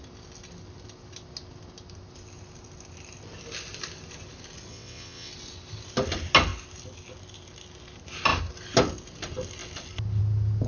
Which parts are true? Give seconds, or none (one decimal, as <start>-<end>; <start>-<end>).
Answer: 0.0-4.7; 5.3-10.7